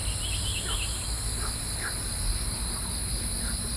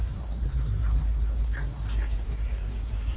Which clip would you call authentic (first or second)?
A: first